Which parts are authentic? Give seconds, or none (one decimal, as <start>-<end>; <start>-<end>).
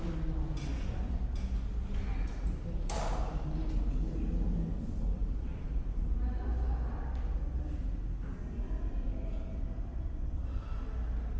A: 0.0-2.1; 4.2-5.2; 6.4-11.4